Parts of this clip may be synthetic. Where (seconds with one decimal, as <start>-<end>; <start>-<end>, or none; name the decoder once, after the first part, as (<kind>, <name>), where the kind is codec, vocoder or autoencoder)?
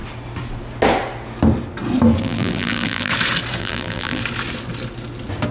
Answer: 2.2-3.1 (vocoder, BigVGAN v2); 3.6-4.2